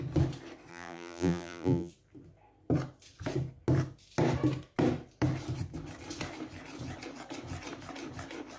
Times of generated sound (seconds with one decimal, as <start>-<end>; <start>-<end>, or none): 0.7-1.9